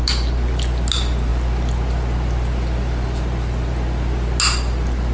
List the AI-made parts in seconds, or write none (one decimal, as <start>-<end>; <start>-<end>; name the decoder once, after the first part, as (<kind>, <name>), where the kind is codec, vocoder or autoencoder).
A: none